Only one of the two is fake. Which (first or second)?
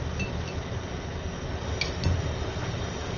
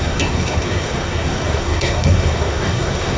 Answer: second